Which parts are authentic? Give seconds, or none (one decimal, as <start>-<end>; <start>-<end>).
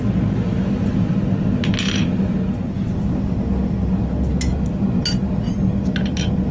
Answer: 0.0-6.5